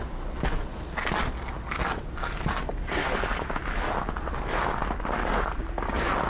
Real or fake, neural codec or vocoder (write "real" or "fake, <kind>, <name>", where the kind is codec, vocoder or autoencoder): real